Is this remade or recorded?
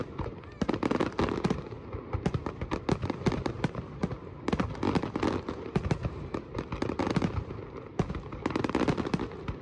recorded